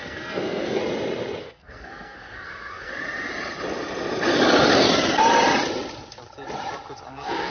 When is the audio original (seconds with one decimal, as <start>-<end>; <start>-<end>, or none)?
0.8-1.4; 2.9-7.1